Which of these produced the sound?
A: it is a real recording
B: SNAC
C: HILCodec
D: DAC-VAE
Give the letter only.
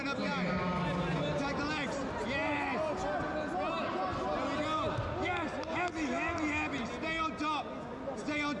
A